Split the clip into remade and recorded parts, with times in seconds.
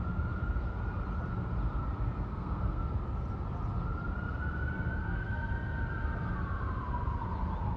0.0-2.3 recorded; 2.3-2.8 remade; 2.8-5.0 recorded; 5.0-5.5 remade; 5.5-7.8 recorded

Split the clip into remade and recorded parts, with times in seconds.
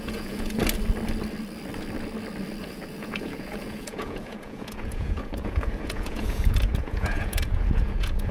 0.0-0.6 remade; 0.6-2.6 recorded; 2.6-8.3 remade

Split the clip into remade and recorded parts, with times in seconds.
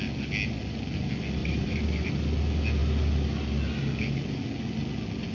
0.0-1.4 recorded; 1.4-2.1 remade; 2.1-5.3 recorded